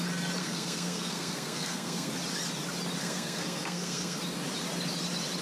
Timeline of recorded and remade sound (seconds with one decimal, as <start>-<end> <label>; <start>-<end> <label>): 0.0-0.4 recorded; 0.4-2.1 remade; 2.1-3.0 recorded; 3.0-4.2 remade; 4.2-5.4 recorded